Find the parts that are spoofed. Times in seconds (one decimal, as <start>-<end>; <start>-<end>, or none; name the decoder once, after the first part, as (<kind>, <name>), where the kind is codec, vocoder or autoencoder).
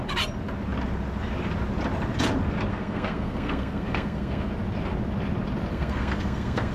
2.7-4.5 (codec, SNAC); 5.7-6.7